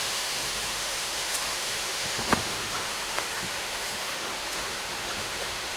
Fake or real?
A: fake